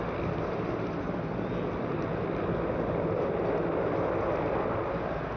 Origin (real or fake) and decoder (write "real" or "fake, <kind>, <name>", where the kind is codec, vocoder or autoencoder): real